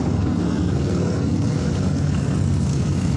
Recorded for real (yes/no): no